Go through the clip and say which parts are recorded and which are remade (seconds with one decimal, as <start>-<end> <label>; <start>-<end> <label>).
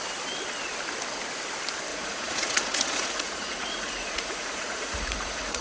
0.0-1.9 recorded; 1.9-5.6 remade